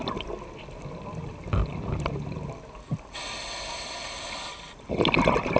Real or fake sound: real